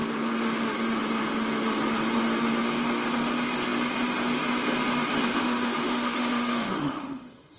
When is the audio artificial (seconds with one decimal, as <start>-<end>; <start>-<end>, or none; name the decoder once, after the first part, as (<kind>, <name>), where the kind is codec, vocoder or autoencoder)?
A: 5.3-7.6 (autoencoder, DAC-VAE)